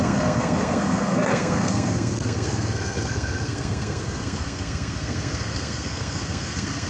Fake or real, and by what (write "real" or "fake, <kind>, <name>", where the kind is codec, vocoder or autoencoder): fake, codec, SNAC